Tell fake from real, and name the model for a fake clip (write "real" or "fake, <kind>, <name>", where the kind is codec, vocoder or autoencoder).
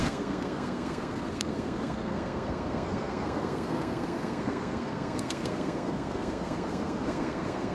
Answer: fake, codec, SNAC